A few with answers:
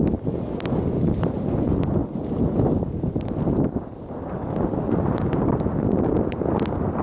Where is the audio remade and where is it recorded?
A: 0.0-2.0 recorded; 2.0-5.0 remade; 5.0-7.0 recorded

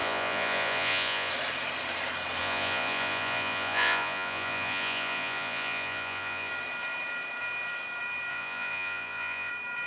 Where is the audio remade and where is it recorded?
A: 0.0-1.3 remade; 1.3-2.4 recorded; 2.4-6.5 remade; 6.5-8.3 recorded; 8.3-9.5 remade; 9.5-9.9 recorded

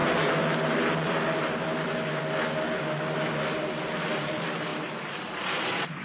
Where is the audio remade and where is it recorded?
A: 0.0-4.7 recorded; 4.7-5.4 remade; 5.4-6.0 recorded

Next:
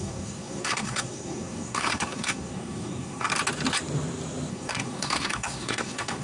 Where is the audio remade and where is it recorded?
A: 0.0-3.3 remade; 3.3-4.5 recorded; 4.5-6.2 remade

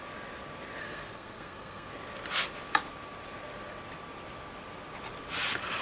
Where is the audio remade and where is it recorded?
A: 0.0-0.8 recorded; 0.8-1.9 remade; 1.9-5.8 recorded